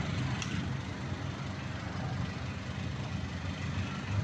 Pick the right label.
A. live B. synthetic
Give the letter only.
A